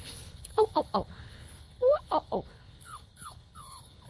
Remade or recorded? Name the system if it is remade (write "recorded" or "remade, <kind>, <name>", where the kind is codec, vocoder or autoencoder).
remade, codec, HILCodec